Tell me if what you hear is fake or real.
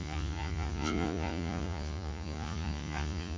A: fake